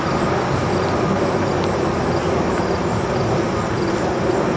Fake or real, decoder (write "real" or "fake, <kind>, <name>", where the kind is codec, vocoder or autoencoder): real